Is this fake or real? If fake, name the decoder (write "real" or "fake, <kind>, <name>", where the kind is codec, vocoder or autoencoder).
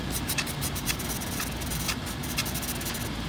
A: real